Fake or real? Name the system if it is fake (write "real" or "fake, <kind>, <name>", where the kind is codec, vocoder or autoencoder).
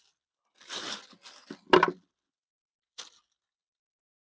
real